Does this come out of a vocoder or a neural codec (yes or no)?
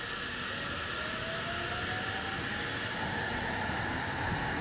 no